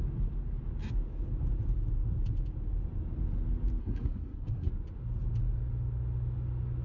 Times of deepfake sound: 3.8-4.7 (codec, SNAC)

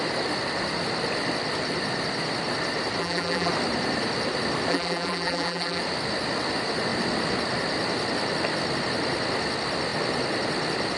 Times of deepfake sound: 3.0-3.5 (vocoder, BigVGAN v2); 4.7-5.8

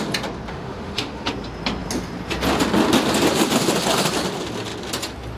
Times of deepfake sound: 0.5-1.3 (autoencoder, DAC-VAE)

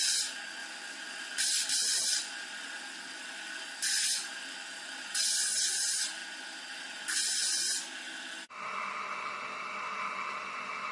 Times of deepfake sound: 0.6-5.2 (vocoder, BigVGAN v2)

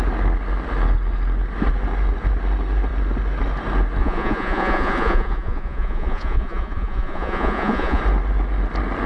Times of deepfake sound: 4.0-8.0 (vocoder, Vocos)